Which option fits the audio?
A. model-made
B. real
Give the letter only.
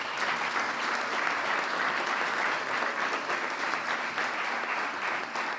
B